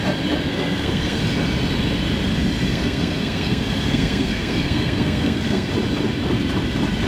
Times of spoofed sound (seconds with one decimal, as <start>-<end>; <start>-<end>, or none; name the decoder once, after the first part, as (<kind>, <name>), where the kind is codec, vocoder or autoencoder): 0.5-1.2 (codec, SNAC); 2.7-5.7